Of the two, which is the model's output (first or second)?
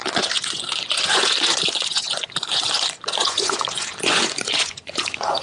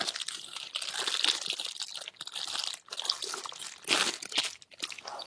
first